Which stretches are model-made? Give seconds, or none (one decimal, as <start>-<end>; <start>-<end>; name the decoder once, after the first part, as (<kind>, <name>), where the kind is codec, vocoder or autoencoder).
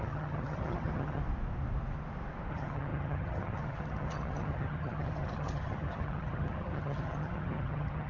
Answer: 0.0-1.2 (vocoder, HiFi-GAN); 2.5-8.1